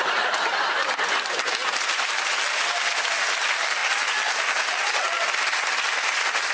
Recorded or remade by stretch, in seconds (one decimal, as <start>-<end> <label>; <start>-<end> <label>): 0.0-6.5 recorded